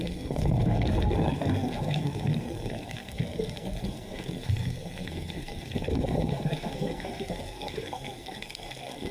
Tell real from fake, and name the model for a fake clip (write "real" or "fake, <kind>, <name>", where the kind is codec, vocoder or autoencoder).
fake, codec, SNAC